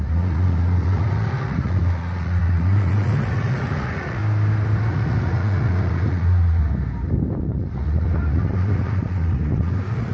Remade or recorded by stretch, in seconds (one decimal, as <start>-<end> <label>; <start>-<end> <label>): 0.0-4.2 remade; 4.2-4.9 recorded; 4.9-6.6 remade; 6.6-7.4 recorded; 7.4-10.1 remade